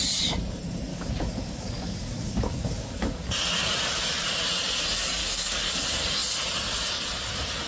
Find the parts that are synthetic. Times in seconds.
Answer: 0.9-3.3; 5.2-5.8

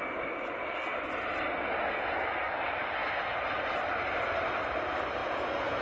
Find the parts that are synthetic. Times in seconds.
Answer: 5.2-5.8

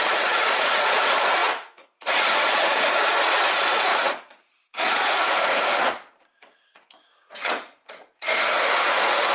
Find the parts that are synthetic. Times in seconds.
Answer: 0.0-9.3